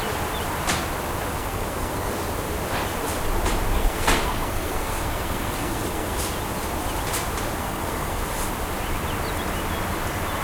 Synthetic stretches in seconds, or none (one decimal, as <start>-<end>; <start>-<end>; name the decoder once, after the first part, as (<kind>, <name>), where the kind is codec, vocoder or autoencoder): 1.3-2.1 (codec, SNAC); 3.8-6.2; 7.6-8.2

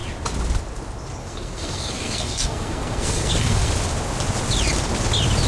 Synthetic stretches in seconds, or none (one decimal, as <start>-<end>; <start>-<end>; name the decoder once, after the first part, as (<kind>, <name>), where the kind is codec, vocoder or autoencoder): 1.2-3.7 (codec, SNAC)

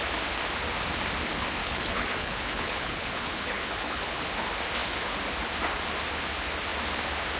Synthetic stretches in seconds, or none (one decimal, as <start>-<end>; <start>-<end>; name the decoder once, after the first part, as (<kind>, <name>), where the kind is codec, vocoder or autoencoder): 1.6-4.2 (codec, HILCodec)